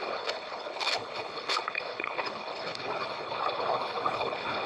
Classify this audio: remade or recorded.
remade